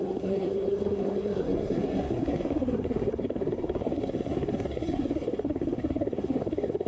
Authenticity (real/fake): fake